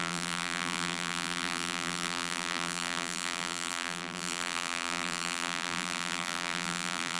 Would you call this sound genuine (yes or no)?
no